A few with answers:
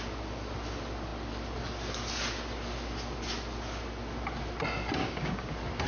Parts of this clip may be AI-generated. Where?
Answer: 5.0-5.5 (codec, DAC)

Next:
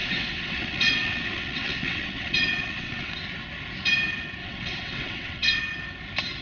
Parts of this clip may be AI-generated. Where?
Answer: 0.0-3.1 (vocoder, WaveNeXt); 4.4-5.6

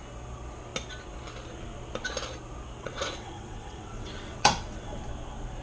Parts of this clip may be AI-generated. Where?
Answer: 2.8-5.0 (vocoder, WaveNeXt)

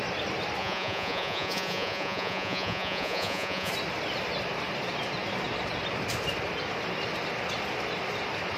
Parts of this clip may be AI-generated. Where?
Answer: 0.6-3.7 (vocoder, Vocos)

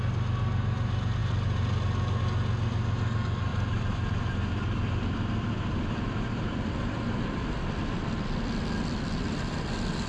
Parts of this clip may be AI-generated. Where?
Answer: 3.5-7.8 (vocoder, BigVGAN v2)

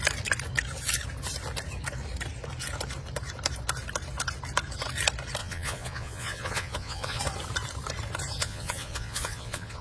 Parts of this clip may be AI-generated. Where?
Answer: 5.4-7.2 (vocoder, Vocos); 8.4-9.8

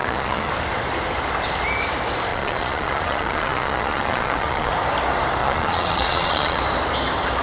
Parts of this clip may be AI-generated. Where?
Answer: 0.0-0.5 (vocoder, Vocos); 2.3-4.7; 5.4-6.6

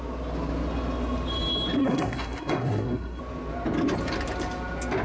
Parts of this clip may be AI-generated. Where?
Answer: 1.8-3.2 (codec, SNAC)